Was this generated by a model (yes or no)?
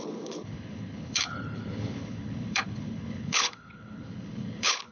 yes